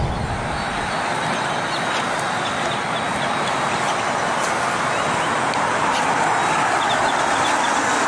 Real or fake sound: real